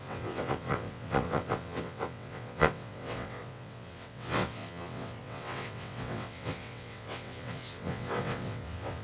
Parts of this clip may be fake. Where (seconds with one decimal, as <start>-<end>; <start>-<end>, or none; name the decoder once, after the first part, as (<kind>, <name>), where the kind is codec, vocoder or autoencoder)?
0.0-9.0 (vocoder, WaveNeXt)